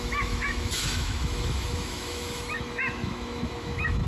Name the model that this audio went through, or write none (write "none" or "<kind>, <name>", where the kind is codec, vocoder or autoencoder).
autoencoder, DAC-VAE